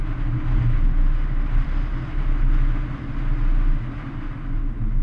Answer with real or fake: real